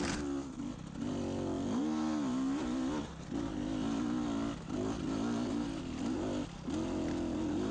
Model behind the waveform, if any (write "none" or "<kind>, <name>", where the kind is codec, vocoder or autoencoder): none